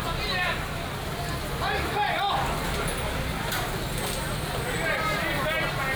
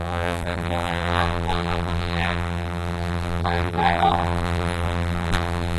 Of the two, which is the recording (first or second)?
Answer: first